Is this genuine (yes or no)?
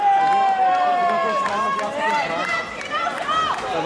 yes